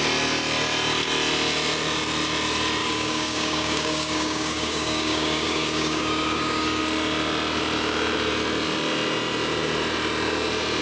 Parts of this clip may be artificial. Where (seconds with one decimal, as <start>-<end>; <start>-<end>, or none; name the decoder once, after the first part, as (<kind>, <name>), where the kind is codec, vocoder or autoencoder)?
2.8-6.8 (codec, DAC)